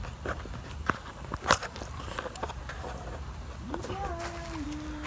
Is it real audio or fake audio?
real